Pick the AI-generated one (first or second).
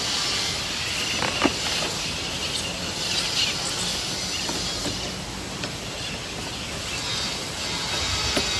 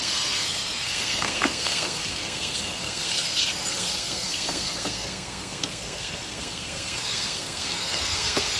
second